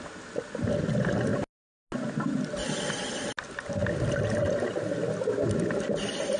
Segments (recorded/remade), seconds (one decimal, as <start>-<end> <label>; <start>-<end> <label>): 0.0-6.4 recorded